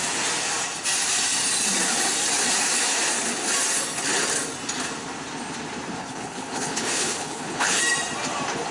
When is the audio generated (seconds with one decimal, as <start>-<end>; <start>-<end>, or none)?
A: 6.0-7.8